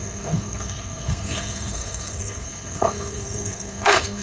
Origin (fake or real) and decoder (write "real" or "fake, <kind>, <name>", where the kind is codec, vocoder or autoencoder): fake, codec, SNAC